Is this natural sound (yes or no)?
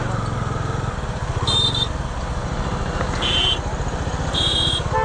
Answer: yes